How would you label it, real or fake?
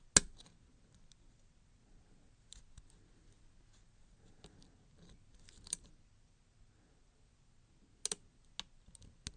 real